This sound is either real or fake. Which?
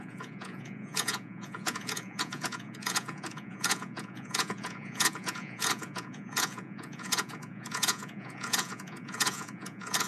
fake